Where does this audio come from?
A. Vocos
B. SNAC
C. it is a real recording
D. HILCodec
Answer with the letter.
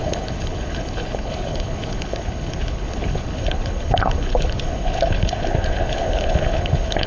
D